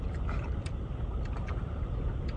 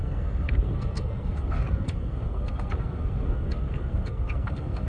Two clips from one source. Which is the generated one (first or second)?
second